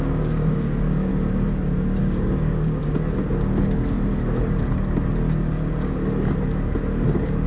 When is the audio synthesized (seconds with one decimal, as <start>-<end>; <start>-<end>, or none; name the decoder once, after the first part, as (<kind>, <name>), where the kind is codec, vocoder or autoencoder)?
0.0-1.1 (codec, DAC); 2.0-2.8